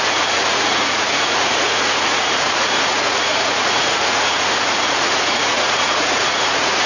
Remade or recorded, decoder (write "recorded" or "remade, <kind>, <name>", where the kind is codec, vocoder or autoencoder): remade, vocoder, Vocos